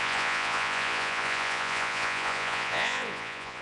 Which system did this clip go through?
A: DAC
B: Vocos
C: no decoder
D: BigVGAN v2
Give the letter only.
B